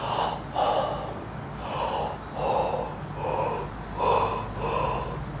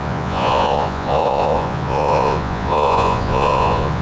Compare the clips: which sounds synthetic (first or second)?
second